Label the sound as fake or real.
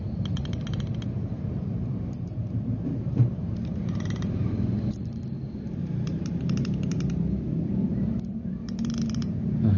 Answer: fake